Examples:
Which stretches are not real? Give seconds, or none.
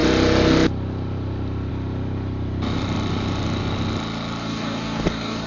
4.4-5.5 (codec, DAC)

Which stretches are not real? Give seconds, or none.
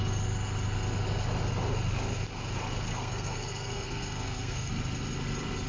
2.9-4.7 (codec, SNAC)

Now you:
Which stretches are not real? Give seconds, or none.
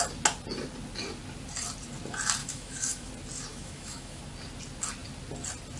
2.4-3.1 (autoencoder, DAC-VAE); 3.5-4.2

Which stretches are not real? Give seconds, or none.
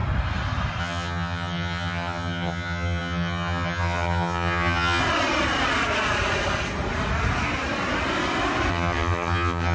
0.8-5.0 (vocoder, HiFi-GAN); 8.7-9.7